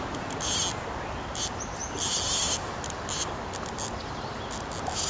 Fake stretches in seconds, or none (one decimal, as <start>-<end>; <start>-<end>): none